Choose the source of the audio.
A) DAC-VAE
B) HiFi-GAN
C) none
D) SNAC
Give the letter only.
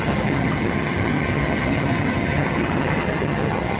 B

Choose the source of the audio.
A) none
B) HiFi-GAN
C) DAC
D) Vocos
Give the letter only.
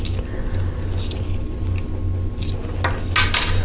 A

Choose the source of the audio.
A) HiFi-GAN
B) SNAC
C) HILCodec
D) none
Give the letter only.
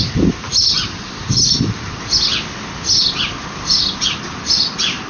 D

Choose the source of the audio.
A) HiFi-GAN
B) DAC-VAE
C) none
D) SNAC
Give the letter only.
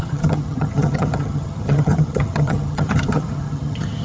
A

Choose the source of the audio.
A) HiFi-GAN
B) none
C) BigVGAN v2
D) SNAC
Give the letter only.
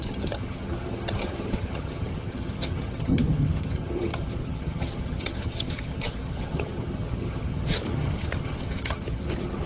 A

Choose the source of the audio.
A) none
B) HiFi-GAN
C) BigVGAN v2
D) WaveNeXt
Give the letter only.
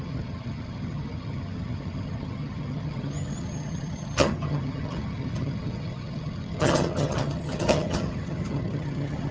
B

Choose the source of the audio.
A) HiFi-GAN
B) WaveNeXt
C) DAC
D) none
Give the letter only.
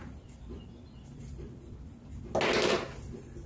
D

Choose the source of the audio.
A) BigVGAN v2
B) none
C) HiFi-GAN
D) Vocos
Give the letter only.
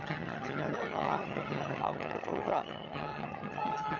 C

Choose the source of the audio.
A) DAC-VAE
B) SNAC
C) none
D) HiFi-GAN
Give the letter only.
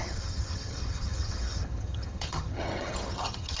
D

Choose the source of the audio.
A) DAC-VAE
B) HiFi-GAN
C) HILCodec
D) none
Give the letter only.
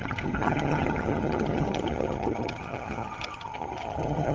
B